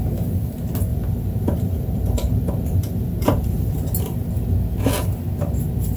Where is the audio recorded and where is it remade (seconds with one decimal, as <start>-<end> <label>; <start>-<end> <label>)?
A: 0.0-0.9 recorded; 0.9-3.7 remade; 3.7-6.0 recorded